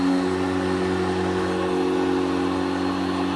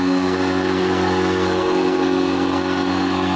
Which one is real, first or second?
first